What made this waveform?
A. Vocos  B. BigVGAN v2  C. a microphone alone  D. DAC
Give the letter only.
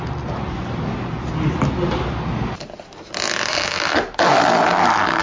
C